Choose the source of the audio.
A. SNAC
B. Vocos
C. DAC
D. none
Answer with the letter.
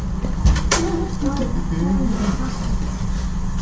D